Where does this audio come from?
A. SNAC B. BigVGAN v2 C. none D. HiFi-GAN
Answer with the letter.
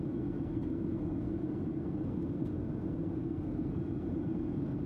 A